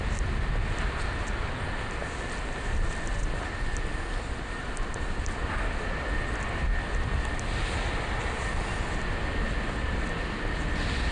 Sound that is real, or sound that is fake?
real